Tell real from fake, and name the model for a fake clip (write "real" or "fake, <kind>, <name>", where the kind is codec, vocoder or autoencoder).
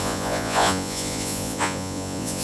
fake, vocoder, Vocos